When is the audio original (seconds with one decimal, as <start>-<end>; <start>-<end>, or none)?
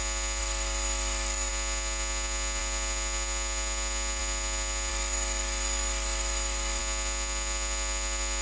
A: 0.0-0.4; 1.5-4.9; 6.8-8.4